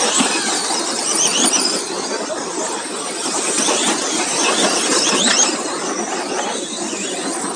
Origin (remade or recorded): recorded